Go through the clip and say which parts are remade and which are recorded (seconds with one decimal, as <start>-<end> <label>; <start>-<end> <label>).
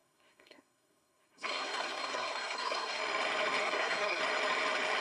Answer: 0.0-3.0 remade; 3.0-3.6 recorded; 3.6-4.2 remade; 4.2-5.0 recorded